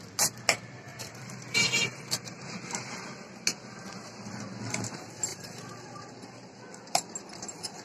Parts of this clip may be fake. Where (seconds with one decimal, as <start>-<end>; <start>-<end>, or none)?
0.9-3.3; 5.3-6.6